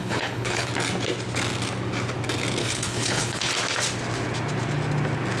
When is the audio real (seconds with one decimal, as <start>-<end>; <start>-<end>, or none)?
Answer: 0.7-2.6; 3.5-5.4